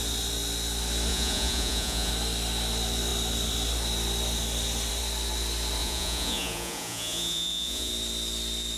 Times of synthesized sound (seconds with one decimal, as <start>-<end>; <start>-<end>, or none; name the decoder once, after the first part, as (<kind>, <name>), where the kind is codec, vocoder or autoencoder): 1.1-2.1 (vocoder, Vocos); 5.8-7.9